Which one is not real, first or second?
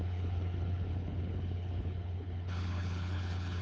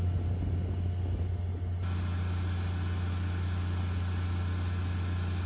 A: first